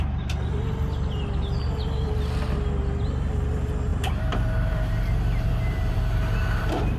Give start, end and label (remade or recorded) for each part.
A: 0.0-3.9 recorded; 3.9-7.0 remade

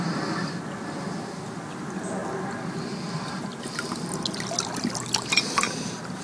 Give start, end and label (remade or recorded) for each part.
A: 0.0-6.2 recorded

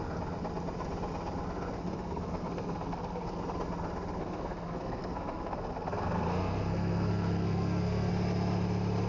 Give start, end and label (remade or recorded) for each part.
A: 0.0-1.8 recorded; 1.8-3.4 remade; 3.4-4.2 recorded; 4.2-8.1 remade; 8.1-9.1 recorded

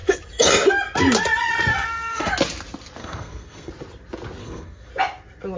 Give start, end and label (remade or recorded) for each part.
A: 0.0-1.7 recorded; 1.7-2.3 remade; 2.3-3.0 recorded; 3.0-3.7 remade; 3.7-4.4 recorded; 4.4-4.9 remade; 4.9-5.6 recorded